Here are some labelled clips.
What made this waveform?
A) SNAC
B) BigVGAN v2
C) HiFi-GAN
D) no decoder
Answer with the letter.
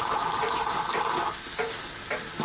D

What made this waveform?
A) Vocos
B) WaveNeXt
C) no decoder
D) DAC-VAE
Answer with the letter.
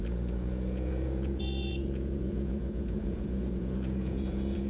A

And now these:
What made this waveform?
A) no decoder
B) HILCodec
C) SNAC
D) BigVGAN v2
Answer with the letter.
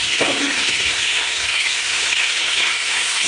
C